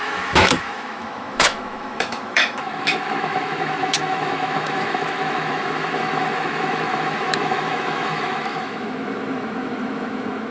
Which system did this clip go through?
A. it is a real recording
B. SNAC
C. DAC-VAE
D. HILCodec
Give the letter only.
C